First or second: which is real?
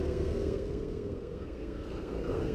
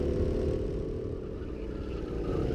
second